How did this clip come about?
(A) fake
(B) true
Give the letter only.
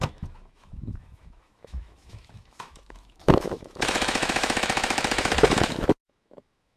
A